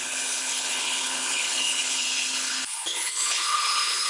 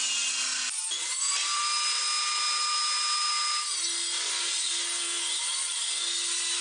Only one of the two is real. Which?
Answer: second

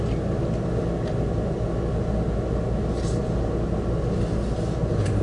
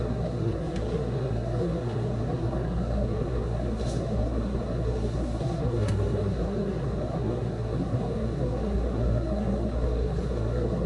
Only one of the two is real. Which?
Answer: first